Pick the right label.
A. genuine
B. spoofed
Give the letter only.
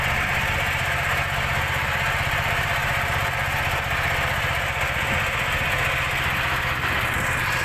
A